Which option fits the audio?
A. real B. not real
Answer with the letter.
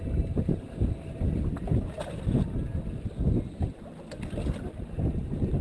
A